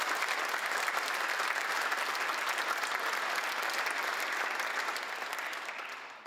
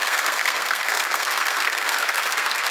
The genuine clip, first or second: first